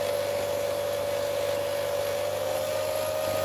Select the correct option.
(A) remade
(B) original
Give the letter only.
B